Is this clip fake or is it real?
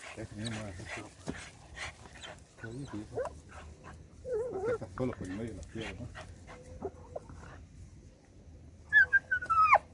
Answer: real